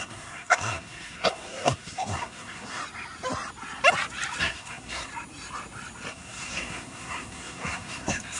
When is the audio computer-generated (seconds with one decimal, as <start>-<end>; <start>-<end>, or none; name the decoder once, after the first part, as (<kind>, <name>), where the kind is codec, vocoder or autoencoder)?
0.0-2.8 (codec, SNAC); 4.4-5.1; 6.1-8.4